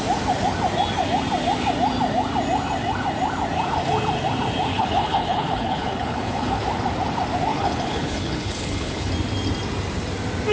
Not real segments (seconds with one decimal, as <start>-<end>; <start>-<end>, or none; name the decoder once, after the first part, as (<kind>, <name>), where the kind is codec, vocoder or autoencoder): 4.7-6.6 (codec, HILCodec); 7.5-9.1